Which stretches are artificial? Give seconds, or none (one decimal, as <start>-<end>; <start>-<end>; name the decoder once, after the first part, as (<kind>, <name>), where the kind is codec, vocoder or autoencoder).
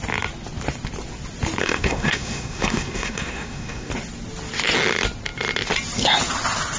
1.6-3.9 (codec, SNAC)